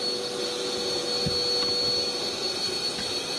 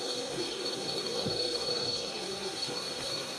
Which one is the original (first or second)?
first